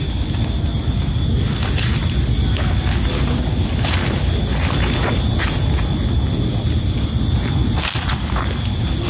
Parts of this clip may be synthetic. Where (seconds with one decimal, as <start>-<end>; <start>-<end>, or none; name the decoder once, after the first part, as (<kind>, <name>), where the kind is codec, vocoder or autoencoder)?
none